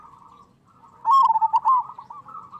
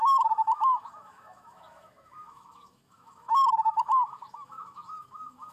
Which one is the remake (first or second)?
second